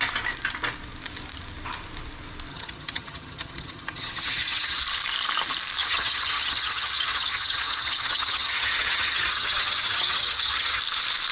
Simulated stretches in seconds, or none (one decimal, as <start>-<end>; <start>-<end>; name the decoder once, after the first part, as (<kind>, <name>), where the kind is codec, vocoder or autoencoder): 2.5-4.8 (vocoder, HiFi-GAN); 5.8-10.8